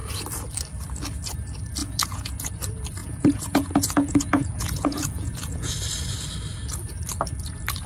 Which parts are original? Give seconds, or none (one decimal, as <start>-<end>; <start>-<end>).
0.0-1.8; 2.5-3.0; 5.7-7.9